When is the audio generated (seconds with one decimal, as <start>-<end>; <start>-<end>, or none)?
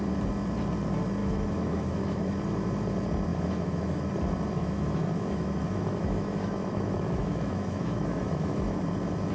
1.2-2.3; 3.3-4.1; 4.6-8.8